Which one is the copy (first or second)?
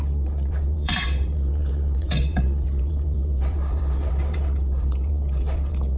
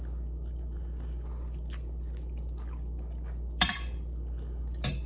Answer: first